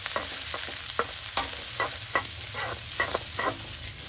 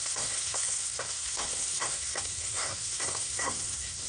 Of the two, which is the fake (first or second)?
second